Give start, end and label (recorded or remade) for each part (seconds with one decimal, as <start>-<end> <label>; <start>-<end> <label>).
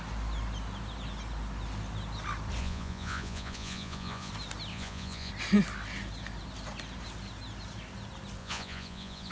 0.0-2.6 recorded; 2.6-4.3 remade; 4.3-4.7 recorded; 4.7-5.3 remade; 5.3-8.4 recorded; 8.4-9.3 remade